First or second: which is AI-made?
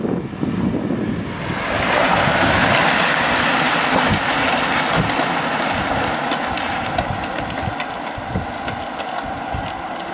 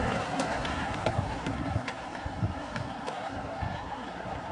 second